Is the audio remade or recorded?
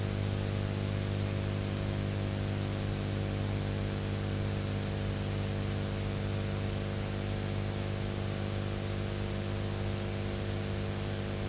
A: recorded